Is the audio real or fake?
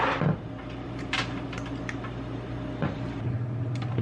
fake